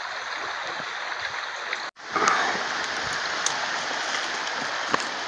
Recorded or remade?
recorded